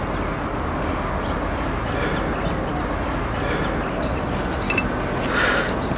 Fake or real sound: real